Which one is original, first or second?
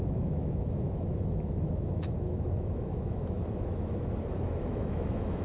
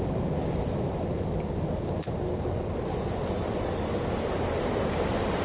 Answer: second